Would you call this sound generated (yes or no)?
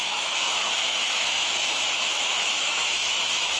yes